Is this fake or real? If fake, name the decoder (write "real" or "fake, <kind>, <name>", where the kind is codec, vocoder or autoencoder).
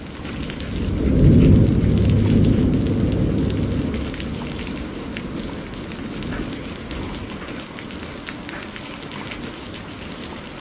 real